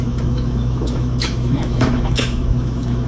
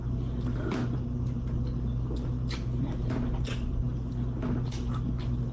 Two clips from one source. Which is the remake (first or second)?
first